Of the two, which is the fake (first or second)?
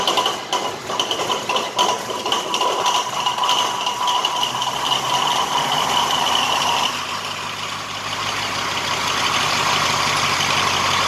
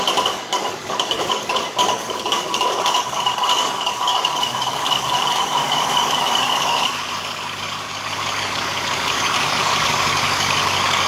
second